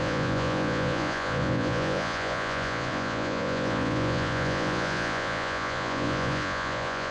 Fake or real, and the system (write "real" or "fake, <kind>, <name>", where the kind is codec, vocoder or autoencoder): fake, vocoder, Vocos